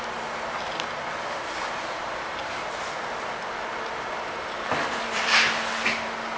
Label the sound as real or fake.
real